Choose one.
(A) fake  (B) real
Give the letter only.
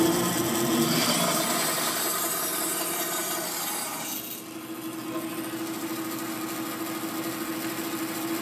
B